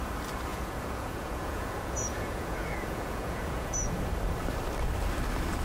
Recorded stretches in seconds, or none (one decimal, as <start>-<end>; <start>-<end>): 0.0-0.5; 3.9-5.6